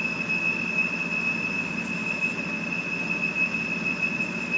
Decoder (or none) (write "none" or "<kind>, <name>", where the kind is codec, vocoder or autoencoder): none